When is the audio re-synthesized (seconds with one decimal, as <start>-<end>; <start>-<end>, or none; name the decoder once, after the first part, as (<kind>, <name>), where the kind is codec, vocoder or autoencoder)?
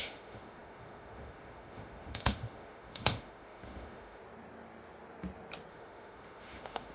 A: 0.0-4.2 (autoencoder, DAC-VAE); 5.7-6.9